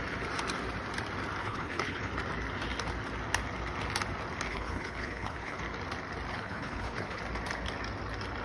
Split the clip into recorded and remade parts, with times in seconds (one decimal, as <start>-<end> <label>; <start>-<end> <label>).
0.0-1.4 recorded; 1.4-2.1 remade; 2.1-4.5 recorded; 4.5-5.6 remade; 5.6-6.3 recorded; 6.3-7.2 remade; 7.2-8.4 recorded